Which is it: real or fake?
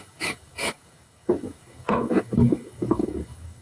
fake